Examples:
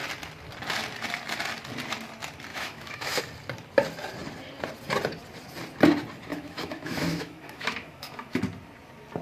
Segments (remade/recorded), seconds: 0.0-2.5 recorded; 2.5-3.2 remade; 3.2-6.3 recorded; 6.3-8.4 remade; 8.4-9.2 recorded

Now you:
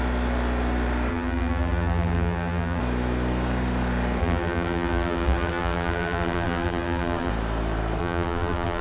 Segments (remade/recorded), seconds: 0.0-1.1 recorded; 1.1-2.8 remade; 2.8-4.2 recorded; 4.2-7.3 remade; 7.3-8.0 recorded; 8.0-8.8 remade

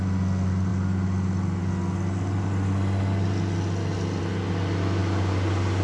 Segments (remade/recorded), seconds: 0.0-5.8 recorded

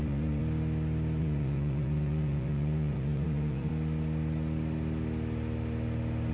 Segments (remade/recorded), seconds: 0.0-0.4 remade; 0.4-1.2 recorded; 1.2-3.7 remade; 3.7-6.3 recorded

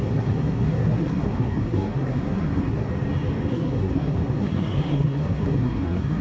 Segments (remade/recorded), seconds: 0.0-2.9 remade; 2.9-3.5 recorded; 3.5-6.2 remade

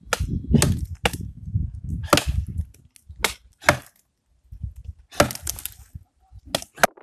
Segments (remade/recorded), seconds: 0.0-1.3 recorded; 1.3-1.9 remade; 1.9-7.0 recorded

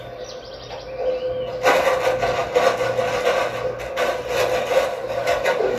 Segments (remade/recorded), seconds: 0.0-4.9 recorded; 4.9-5.8 remade

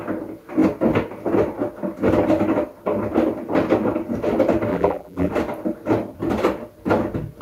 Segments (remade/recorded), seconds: 0.0-4.7 recorded; 4.7-5.3 remade; 5.3-7.4 recorded